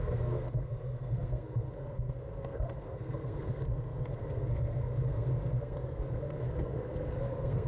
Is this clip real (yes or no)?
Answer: no